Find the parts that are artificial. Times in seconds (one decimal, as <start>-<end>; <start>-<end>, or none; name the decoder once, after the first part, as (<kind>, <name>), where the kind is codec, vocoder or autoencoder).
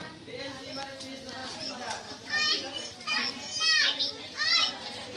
none